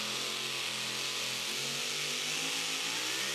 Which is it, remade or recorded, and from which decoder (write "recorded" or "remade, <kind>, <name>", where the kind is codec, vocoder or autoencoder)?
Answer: recorded